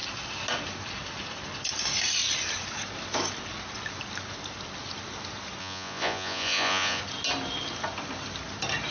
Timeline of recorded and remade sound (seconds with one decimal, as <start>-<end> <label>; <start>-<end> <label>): 0.0-5.6 recorded; 5.6-7.0 remade; 7.0-8.9 recorded